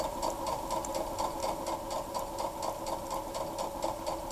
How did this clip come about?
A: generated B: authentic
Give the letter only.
B